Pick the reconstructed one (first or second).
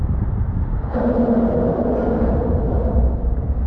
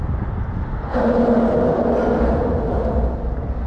first